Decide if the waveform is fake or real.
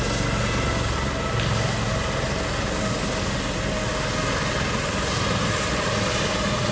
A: real